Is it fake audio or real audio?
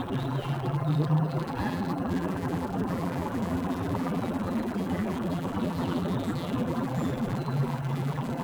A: fake